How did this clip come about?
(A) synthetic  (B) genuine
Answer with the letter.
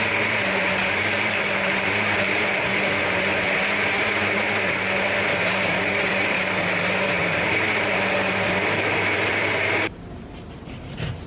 A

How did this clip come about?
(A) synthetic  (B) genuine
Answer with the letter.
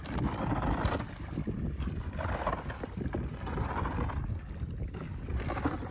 B